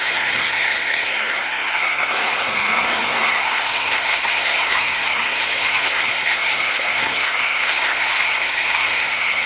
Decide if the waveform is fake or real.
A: fake